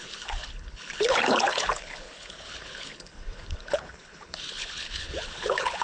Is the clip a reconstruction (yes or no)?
yes